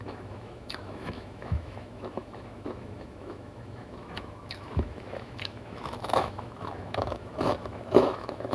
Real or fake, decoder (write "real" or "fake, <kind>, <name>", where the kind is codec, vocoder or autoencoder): fake, autoencoder, DAC-VAE